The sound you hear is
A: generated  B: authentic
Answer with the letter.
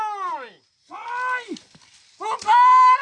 B